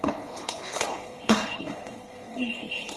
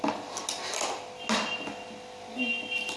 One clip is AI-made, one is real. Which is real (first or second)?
second